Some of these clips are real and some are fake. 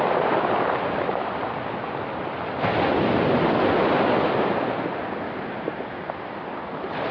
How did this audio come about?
real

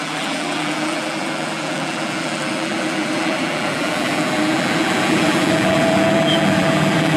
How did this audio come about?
fake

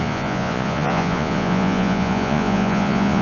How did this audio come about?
fake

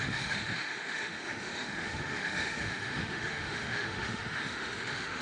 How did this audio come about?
fake